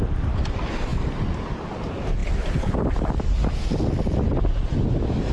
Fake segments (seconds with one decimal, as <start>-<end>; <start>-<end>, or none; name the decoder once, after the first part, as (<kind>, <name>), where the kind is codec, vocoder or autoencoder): none